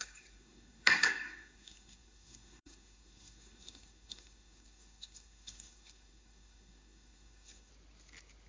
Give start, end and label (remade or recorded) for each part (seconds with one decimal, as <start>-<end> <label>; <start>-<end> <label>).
0.0-7.7 remade; 7.7-8.5 recorded